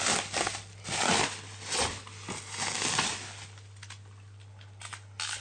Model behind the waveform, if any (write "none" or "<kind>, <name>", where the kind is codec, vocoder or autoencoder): none